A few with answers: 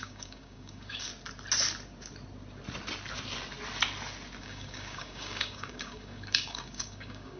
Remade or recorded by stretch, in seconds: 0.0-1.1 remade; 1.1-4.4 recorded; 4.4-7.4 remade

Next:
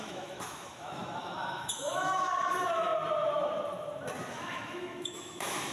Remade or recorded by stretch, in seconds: 0.0-2.9 remade; 2.9-4.3 recorded; 4.3-5.7 remade

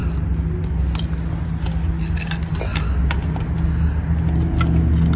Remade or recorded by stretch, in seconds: 0.0-5.2 recorded

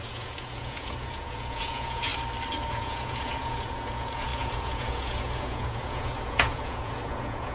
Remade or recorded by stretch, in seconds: 0.0-2.1 remade; 2.1-2.7 recorded; 2.7-7.5 remade

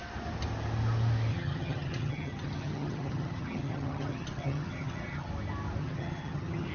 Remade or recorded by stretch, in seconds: 0.0-1.3 recorded; 1.3-5.3 remade; 5.3-5.8 recorded; 5.8-6.7 remade

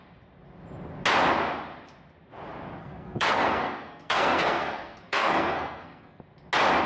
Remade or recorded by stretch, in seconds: 0.0-2.8 recorded; 2.8-6.2 remade; 6.2-6.9 recorded